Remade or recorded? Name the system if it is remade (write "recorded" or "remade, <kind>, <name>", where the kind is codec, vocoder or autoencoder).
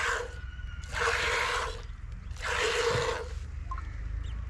recorded